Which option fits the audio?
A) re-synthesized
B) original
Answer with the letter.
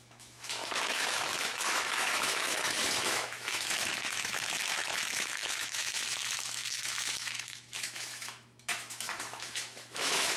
A